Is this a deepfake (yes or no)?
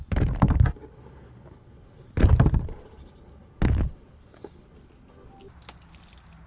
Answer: no